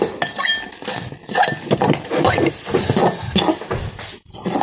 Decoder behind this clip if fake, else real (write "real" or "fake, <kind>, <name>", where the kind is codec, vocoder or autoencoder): real